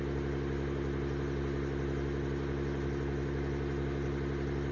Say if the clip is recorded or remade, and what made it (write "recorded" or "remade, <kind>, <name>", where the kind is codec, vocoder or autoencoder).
recorded